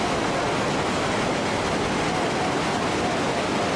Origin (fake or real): real